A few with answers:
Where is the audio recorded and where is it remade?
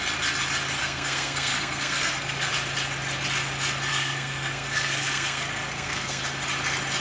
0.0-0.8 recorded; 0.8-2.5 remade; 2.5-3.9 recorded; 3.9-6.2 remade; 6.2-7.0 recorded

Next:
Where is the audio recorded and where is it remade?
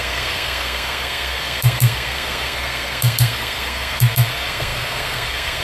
0.0-5.6 remade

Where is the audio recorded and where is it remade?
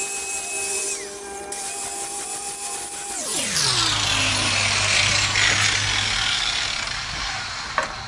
0.0-8.1 recorded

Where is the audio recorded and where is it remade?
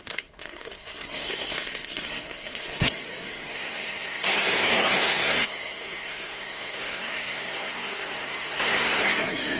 0.0-9.6 remade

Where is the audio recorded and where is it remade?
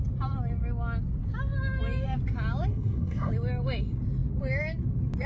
0.0-2.7 recorded; 2.7-3.3 remade; 3.3-5.3 recorded